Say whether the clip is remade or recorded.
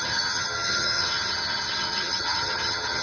remade